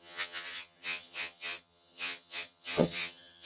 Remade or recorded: remade